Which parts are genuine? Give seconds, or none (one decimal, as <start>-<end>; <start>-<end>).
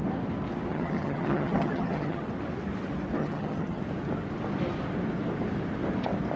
0.0-0.7; 2.3-3.2; 3.8-6.4